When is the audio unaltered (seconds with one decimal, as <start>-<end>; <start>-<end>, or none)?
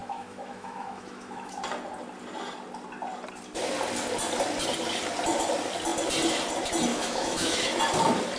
1.6-6.9; 7.8-8.4